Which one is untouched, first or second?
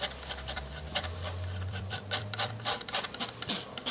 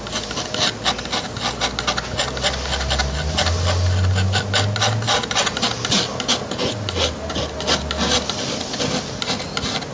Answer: second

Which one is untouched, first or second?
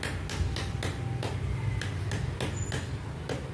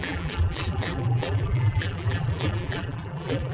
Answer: first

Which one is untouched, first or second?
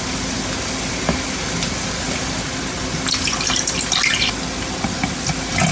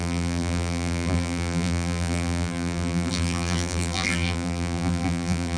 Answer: first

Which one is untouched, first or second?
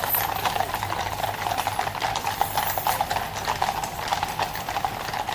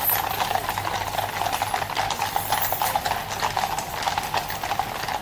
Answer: second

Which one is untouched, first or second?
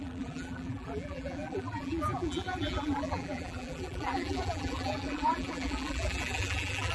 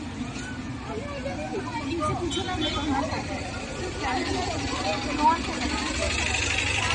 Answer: second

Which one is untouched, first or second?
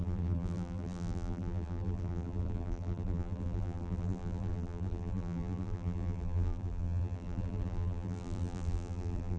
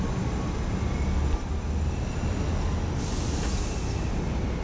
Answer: second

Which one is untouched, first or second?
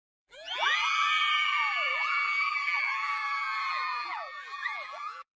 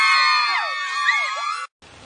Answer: second